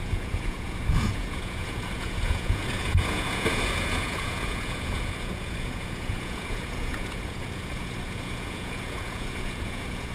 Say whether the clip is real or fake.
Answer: fake